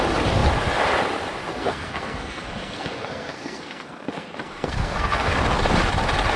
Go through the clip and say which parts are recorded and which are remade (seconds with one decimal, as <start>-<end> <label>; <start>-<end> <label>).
0.0-1.5 recorded; 1.5-5.3 remade; 5.3-6.4 recorded

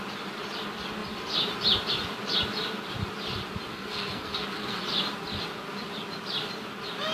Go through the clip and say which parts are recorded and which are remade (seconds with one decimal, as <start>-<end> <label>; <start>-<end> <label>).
0.0-3.7 recorded; 3.7-4.8 remade; 4.8-7.1 recorded

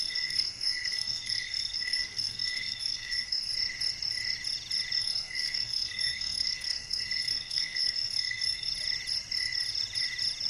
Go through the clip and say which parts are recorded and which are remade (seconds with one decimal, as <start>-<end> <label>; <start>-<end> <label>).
0.0-3.5 remade; 3.5-5.0 recorded; 5.0-8.7 remade; 8.7-10.5 recorded